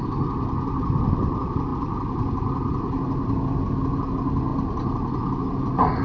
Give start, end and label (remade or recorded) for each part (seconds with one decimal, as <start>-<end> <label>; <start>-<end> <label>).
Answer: 0.0-1.7 recorded; 1.7-4.1 remade; 4.1-4.5 recorded; 4.5-5.5 remade; 5.5-6.0 recorded